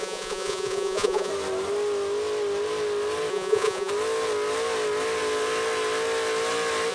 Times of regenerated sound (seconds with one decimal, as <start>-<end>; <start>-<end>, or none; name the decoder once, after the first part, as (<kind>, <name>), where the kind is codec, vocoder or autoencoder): 0.0-1.3 (vocoder, Vocos); 3.3-3.9